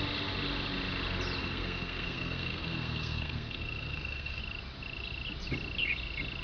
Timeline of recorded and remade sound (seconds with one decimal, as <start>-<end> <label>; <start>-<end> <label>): 0.0-1.4 recorded; 1.4-4.4 remade; 4.4-6.4 recorded